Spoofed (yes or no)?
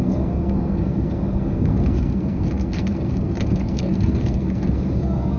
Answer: yes